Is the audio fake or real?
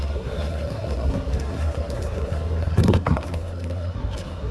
fake